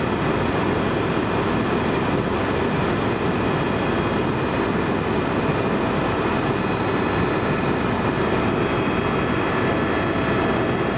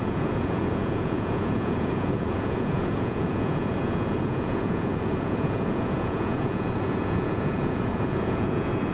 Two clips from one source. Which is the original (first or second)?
first